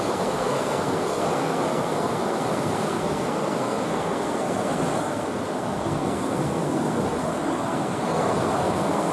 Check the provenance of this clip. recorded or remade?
remade